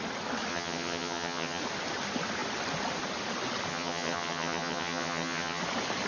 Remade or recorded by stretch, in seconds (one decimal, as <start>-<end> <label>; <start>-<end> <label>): 0.0-0.5 recorded; 0.5-1.6 remade; 1.6-3.7 recorded; 3.7-5.6 remade; 5.6-6.1 recorded